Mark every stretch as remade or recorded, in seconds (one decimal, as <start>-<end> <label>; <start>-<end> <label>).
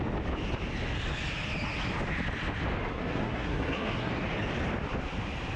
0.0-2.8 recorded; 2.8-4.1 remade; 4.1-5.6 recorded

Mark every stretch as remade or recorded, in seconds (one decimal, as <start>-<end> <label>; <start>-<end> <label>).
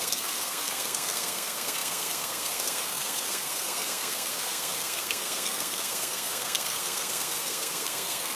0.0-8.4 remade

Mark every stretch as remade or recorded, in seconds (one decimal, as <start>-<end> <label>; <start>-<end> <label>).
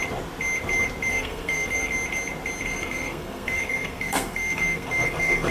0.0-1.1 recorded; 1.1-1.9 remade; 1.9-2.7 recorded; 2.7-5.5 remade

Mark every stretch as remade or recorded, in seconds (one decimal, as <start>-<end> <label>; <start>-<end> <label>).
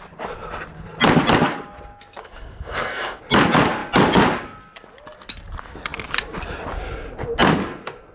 0.0-2.2 recorded; 2.2-3.2 remade; 3.2-8.1 recorded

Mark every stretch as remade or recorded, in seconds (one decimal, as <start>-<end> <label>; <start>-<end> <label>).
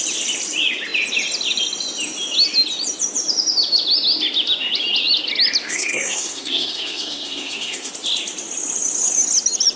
0.0-5.6 recorded; 5.6-7.9 remade; 7.9-9.8 recorded